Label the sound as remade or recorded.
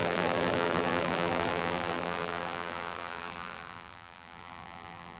remade